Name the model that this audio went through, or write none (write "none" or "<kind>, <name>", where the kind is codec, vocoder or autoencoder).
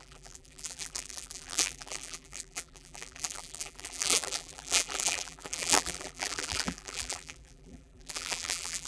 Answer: vocoder, BigVGAN v2